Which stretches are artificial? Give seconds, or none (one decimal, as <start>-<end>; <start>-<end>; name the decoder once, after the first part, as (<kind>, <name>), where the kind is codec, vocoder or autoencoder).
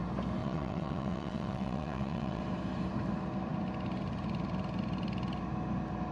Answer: 0.4-2.4 (vocoder, WaveNeXt)